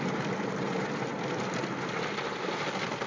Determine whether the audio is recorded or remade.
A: recorded